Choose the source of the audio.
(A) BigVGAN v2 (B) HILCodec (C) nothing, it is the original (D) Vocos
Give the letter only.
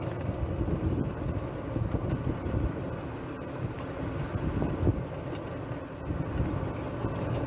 C